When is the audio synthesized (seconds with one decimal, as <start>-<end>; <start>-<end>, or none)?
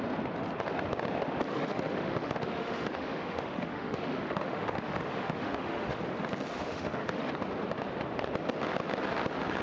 1.5-6.0; 6.5-7.3